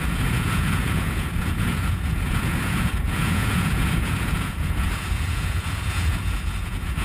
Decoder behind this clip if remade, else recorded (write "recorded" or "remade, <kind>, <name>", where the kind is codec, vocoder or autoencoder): remade, vocoder, Vocos